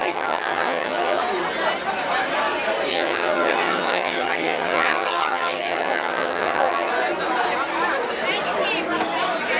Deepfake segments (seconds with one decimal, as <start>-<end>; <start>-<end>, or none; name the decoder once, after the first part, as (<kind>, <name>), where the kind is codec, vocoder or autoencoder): 0.0-1.2 (vocoder, HiFi-GAN); 2.9-6.9